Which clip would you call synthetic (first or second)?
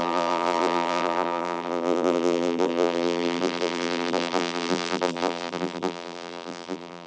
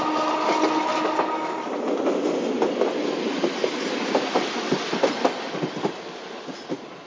first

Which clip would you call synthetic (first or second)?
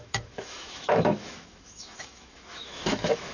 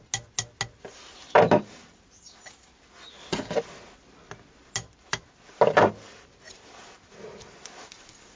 first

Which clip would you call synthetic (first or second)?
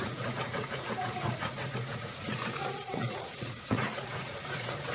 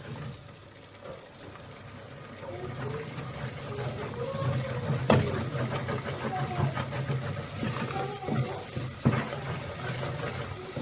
first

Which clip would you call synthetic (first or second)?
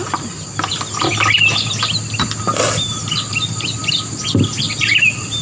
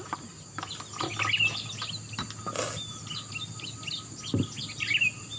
first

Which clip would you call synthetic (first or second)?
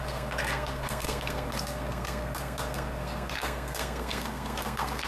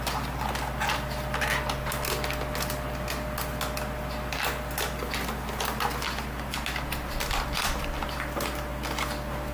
first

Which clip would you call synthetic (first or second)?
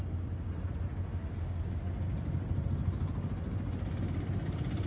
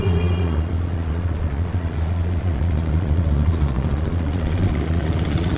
second